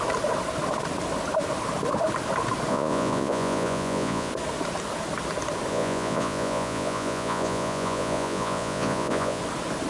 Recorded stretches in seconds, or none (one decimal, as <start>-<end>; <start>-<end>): 0.0-2.7; 4.3-5.7; 9.4-9.9